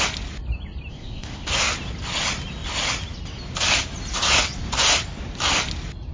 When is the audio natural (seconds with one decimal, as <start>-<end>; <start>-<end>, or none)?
0.0-0.9; 1.5-6.1